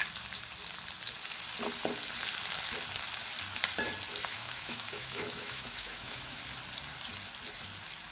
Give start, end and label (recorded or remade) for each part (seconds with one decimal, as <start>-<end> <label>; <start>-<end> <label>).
0.0-4.3 recorded; 4.3-6.4 remade; 6.4-8.1 recorded